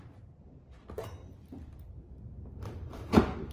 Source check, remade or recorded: recorded